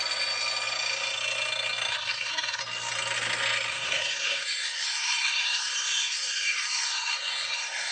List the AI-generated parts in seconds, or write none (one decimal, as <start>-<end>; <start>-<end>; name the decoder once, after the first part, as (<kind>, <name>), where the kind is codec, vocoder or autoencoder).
1.9-2.6 (codec, SNAC); 3.7-7.9